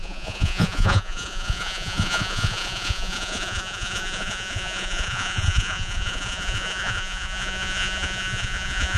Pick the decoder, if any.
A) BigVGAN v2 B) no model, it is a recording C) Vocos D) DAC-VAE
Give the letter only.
C